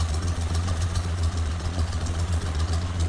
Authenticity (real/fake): fake